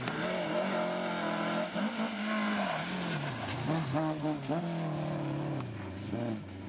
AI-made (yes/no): no